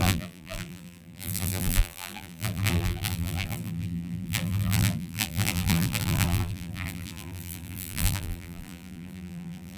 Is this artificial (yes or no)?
yes